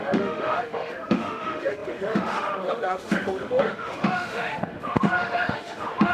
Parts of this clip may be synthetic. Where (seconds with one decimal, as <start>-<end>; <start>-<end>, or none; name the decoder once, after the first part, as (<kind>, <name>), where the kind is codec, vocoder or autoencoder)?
0.0-6.1 (autoencoder, DAC-VAE)